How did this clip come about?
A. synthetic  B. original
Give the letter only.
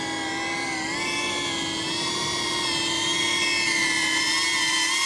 B